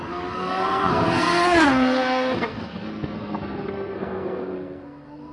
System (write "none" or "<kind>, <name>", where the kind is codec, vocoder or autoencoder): codec, SNAC